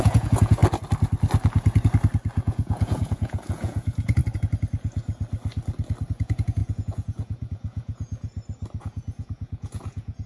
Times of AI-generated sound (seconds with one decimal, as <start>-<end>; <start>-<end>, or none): 0.0-0.6; 2.4-4.2; 6.1-8.3; 8.8-10.3